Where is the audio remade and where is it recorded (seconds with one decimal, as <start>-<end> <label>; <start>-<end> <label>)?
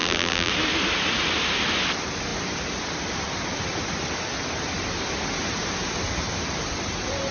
0.0-0.5 remade; 0.5-7.3 recorded